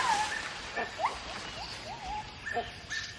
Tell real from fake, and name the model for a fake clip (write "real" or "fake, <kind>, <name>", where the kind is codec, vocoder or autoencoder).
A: real